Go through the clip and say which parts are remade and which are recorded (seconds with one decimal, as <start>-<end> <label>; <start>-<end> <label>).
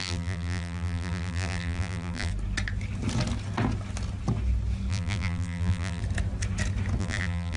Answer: 0.0-2.3 remade; 2.3-4.9 recorded; 4.9-6.0 remade; 6.0-7.0 recorded; 7.0-7.6 remade